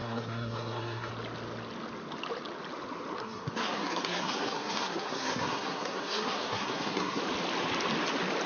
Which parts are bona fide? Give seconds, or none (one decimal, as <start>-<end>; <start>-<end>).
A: 1.1-3.2; 7.2-8.5